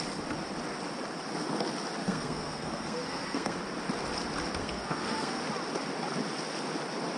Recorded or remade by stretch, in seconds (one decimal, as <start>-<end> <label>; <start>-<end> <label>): 0.0-2.0 recorded; 2.0-3.6 remade; 3.6-4.6 recorded; 4.6-5.4 remade; 5.4-7.2 recorded